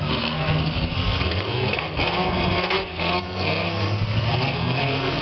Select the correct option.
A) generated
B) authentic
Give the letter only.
A